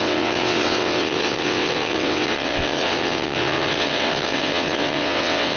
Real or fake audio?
fake